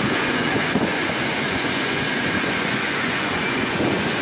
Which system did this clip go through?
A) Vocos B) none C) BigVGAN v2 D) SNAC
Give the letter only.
A